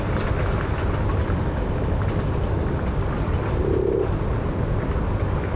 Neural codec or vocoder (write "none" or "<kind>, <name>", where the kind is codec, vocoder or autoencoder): none